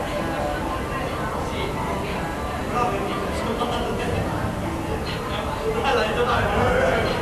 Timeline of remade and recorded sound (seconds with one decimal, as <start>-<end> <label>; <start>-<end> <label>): 0.0-7.2 recorded

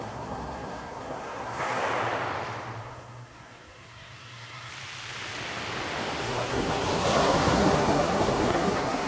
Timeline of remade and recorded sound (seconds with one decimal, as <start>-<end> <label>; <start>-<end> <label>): 0.0-1.8 remade; 1.8-2.8 recorded; 2.8-4.7 remade; 4.7-6.2 recorded; 6.2-9.1 remade

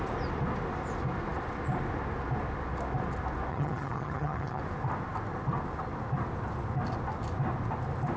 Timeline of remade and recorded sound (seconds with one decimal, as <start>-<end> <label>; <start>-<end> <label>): 0.0-3.5 recorded; 3.5-4.6 remade; 4.6-8.2 recorded

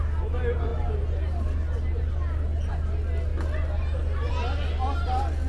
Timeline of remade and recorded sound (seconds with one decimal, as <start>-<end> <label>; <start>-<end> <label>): 0.0-5.5 recorded